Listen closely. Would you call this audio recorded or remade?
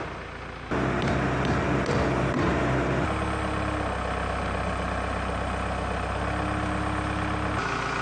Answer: recorded